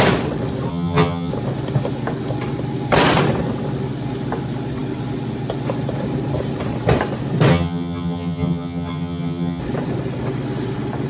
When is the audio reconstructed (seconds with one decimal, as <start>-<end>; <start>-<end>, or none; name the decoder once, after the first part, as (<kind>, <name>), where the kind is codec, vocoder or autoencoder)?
0.7-1.3 (vocoder, HiFi-GAN); 7.5-9.6